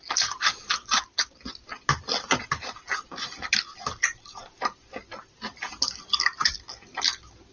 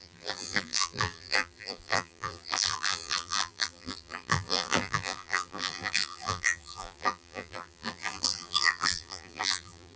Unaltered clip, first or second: first